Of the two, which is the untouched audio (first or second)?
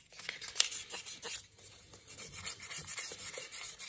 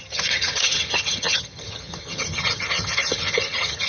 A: first